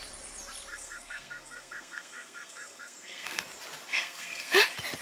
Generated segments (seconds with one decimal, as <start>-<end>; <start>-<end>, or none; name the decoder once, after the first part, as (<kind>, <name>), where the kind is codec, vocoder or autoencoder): 0.7-3.4 (codec, SNAC); 3.9-4.6